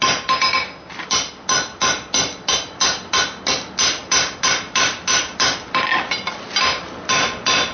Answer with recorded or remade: recorded